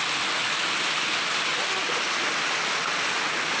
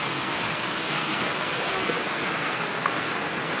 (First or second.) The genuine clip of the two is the first